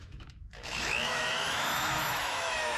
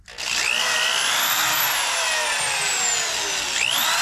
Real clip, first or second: second